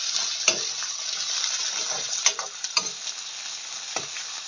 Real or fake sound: real